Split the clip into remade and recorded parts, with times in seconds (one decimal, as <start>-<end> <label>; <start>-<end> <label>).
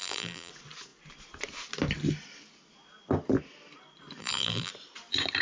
0.0-0.5 remade; 0.5-4.2 recorded; 4.2-4.7 remade; 4.7-5.4 recorded